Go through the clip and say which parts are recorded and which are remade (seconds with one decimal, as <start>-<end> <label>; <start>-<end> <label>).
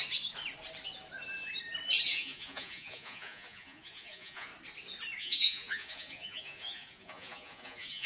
0.0-2.1 recorded; 2.1-4.5 remade; 4.5-5.2 recorded; 5.2-8.1 remade